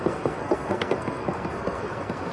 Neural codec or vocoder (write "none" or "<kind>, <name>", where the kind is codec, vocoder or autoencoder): codec, SNAC